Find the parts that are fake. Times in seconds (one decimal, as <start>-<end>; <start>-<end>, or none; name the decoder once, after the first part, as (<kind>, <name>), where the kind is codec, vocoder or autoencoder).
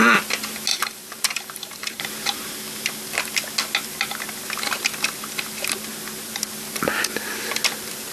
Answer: 0.7-2.0 (vocoder, BigVGAN v2)